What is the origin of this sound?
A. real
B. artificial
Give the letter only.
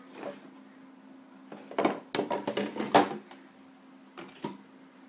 A